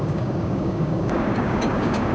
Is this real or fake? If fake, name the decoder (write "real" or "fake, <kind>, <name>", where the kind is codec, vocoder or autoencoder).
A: fake, codec, DAC